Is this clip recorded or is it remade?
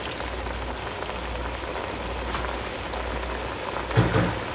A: recorded